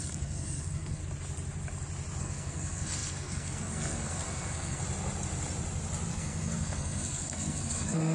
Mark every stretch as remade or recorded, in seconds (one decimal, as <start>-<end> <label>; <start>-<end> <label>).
0.0-1.0 remade; 1.0-2.2 recorded; 2.2-4.8 remade; 4.8-6.1 recorded; 6.1-8.1 remade